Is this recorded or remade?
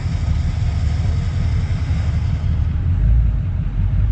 recorded